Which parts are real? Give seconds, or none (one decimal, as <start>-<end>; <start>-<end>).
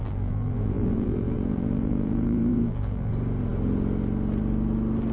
3.1-5.1